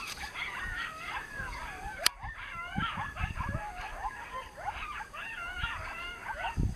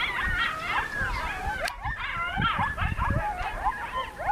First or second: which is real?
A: second